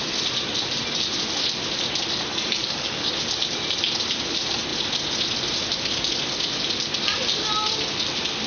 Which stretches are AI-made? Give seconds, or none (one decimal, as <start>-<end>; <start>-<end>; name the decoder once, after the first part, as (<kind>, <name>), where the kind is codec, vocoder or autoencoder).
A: 2.3-3.1 (codec, DAC)